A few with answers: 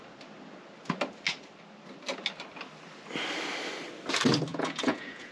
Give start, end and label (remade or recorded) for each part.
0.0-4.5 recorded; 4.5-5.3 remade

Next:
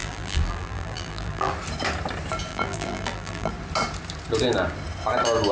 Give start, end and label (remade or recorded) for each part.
0.0-1.5 remade; 1.5-2.5 recorded; 2.5-3.5 remade; 3.5-5.5 recorded